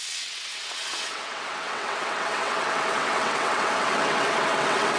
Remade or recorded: remade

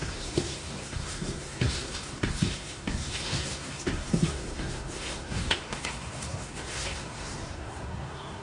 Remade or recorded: remade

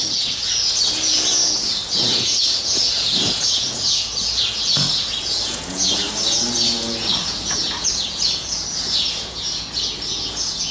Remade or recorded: remade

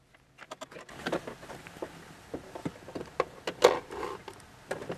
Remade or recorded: recorded